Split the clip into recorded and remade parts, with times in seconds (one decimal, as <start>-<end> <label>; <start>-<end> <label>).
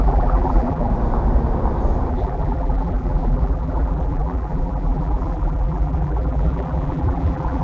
0.0-0.9 remade; 0.9-2.1 recorded; 2.1-7.6 remade